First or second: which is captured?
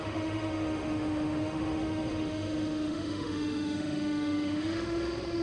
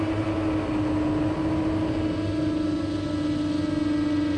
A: second